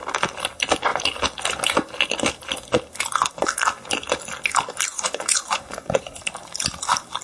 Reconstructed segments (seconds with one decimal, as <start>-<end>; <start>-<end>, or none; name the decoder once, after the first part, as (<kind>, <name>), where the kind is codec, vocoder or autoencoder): 4.9-6.2 (vocoder, Vocos)